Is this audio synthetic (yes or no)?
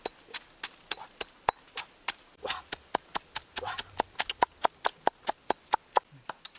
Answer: no